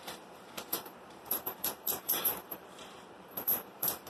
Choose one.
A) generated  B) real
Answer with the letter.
A